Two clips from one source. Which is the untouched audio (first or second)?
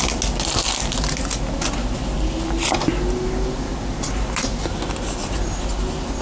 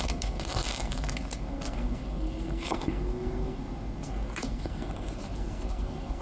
first